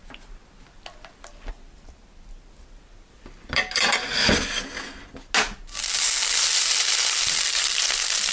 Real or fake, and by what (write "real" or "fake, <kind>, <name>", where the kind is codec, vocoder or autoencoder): real